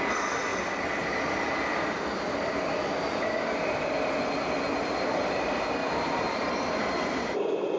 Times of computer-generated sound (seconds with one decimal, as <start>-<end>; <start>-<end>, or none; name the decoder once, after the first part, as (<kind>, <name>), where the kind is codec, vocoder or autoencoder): 0.5-3.3 (vocoder, BigVGAN v2); 5.8-6.5

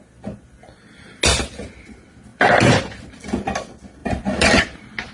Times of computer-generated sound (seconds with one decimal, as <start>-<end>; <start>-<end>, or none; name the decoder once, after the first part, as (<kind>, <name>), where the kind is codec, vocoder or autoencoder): 2.3-2.8 (vocoder, BigVGAN v2); 4.0-4.6

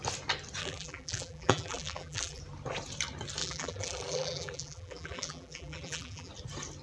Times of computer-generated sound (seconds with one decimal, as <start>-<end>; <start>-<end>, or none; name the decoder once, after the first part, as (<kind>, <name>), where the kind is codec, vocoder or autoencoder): 0.6-2.4 (vocoder, BigVGAN v2); 3.4-6.3

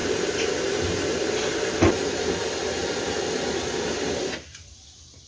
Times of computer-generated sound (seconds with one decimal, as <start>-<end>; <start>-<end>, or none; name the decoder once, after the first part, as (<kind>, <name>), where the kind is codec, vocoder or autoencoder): 0.0-0.5 (vocoder, BigVGAN v2)

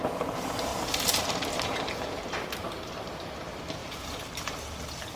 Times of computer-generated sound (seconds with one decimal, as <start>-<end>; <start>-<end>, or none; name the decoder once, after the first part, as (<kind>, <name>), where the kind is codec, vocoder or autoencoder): 0.0-5.2 (vocoder, BigVGAN v2)

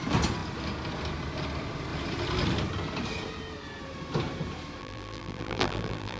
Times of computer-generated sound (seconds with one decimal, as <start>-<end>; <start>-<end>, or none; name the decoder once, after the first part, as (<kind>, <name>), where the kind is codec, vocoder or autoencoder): 4.8-6.2 (vocoder, BigVGAN v2)